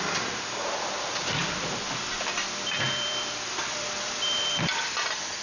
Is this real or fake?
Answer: fake